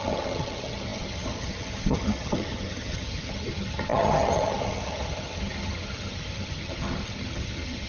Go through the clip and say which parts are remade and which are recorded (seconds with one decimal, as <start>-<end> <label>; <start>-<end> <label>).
0.0-7.9 remade